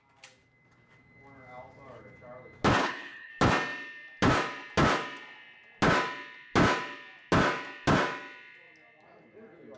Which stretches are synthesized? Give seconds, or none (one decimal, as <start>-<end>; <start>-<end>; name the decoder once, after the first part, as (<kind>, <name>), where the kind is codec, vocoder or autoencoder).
2.8-3.3 (codec, HILCodec)